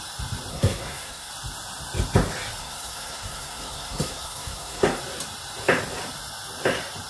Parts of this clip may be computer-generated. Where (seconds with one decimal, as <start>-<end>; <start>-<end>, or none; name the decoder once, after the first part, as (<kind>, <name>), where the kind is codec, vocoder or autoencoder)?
0.5-1.3 (codec, SNAC); 2.6-5.0